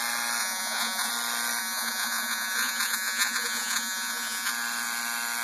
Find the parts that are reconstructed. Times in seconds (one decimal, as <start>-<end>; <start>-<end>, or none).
0.4-1.1; 1.6-4.5